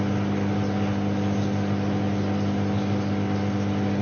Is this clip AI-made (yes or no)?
no